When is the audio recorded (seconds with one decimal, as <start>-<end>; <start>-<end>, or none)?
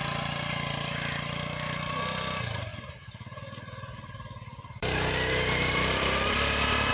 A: 0.0-2.7